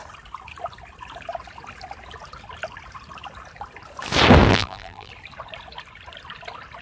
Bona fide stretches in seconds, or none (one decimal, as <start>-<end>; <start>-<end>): 0.0-4.5; 5.1-6.8